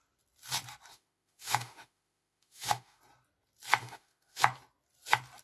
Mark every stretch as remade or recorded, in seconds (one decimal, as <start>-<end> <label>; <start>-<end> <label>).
0.0-0.9 recorded; 0.9-3.0 remade; 3.0-3.8 recorded; 3.8-4.4 remade; 4.4-5.4 recorded